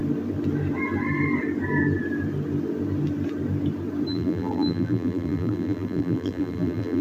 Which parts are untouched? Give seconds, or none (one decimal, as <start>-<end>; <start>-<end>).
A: 0.0-4.1